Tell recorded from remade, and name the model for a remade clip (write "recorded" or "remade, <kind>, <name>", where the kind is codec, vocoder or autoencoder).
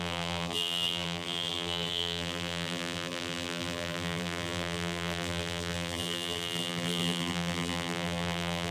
remade, vocoder, BigVGAN v2